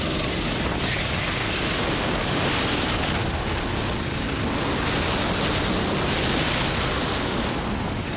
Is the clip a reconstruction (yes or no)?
no